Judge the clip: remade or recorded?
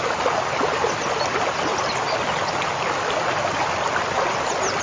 recorded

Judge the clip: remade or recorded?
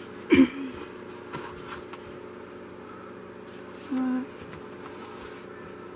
recorded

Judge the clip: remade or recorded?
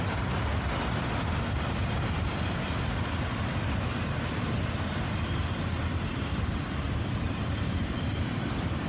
remade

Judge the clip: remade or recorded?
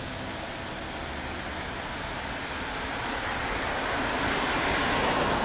recorded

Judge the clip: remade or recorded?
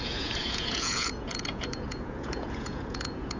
remade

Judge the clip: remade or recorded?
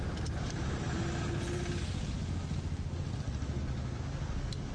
recorded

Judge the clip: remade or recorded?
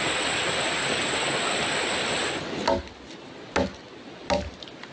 recorded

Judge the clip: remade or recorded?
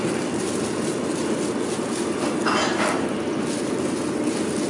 recorded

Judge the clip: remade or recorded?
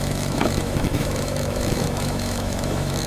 remade